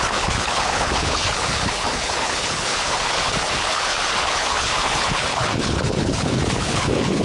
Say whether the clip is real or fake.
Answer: fake